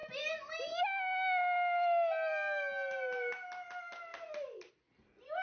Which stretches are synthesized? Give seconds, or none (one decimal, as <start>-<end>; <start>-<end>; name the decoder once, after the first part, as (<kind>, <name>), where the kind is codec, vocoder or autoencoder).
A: none